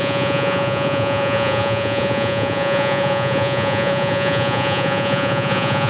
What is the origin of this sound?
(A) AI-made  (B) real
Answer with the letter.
A